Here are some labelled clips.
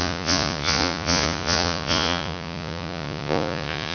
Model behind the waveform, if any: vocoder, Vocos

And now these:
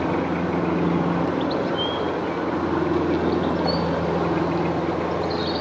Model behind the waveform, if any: none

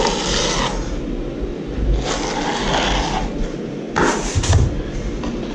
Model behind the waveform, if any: none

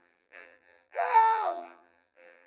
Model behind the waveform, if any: vocoder, BigVGAN v2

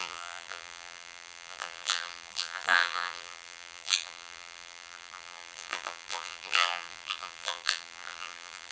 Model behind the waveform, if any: vocoder, BigVGAN v2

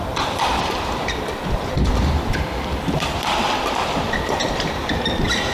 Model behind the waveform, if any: vocoder, BigVGAN v2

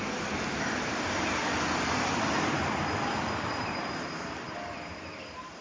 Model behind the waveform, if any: vocoder, BigVGAN v2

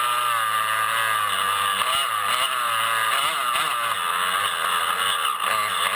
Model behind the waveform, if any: none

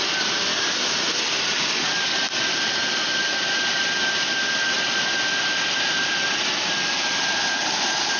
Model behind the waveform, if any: none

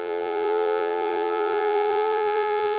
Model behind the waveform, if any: vocoder, BigVGAN v2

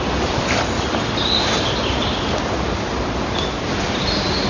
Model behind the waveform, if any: none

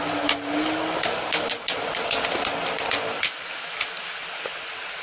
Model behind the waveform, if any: none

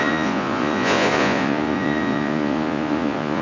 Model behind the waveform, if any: vocoder, Vocos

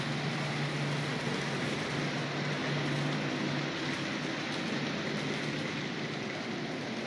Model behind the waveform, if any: none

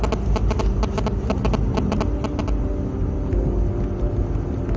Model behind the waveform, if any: none